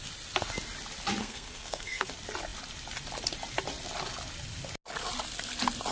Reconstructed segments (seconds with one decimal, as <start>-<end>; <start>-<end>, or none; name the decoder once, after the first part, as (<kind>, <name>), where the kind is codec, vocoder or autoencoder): 1.2-2.1 (codec, SNAC)